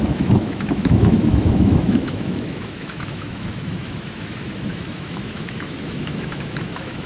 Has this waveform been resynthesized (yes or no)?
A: yes